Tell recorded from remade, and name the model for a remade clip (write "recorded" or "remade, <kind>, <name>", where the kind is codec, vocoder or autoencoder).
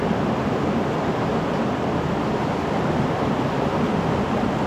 recorded